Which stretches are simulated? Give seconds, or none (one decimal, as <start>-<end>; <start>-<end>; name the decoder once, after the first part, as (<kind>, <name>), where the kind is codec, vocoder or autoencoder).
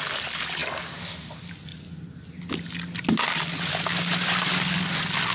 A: none